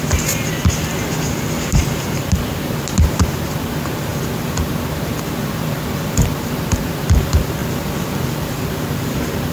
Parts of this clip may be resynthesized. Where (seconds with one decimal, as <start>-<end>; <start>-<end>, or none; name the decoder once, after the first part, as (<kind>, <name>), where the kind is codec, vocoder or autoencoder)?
0.0-7.6 (vocoder, BigVGAN v2); 8.4-9.5